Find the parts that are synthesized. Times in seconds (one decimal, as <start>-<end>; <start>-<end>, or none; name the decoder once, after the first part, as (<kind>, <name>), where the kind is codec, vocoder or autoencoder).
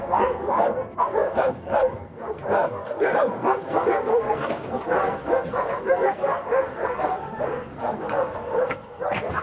0.0-9.4 (codec, SNAC)